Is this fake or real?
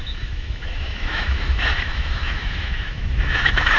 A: fake